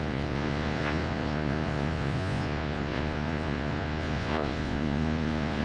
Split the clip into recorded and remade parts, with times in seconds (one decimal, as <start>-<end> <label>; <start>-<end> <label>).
0.0-5.6 remade